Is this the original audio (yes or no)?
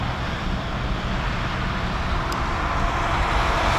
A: yes